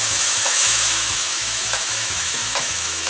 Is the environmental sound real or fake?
fake